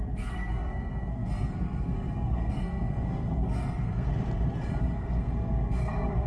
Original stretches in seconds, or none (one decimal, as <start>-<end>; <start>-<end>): 4.1-4.8